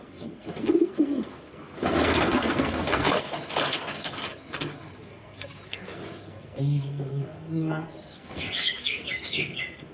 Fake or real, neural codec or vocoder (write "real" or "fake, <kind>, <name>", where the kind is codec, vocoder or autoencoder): fake, codec, SNAC